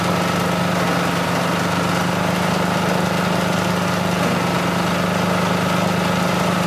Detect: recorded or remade recorded